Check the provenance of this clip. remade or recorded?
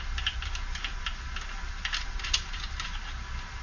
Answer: recorded